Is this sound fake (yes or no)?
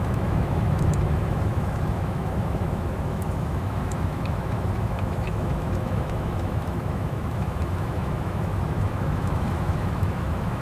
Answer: yes